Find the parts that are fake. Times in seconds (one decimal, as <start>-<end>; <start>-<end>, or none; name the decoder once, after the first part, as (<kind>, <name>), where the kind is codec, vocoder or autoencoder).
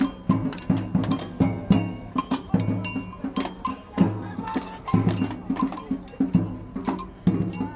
1.2-2.5 (codec, SNAC); 3.7-5.2